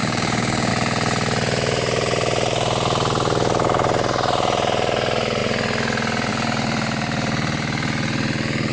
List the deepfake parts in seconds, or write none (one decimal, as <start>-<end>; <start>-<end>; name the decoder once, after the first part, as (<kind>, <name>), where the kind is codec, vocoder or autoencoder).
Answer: 0.0-0.7 (codec, DAC)